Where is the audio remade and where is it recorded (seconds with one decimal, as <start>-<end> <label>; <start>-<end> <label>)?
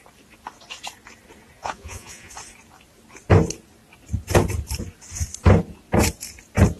0.0-1.6 recorded; 1.6-2.3 remade; 2.3-6.8 recorded